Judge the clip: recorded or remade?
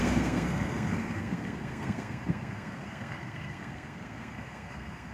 remade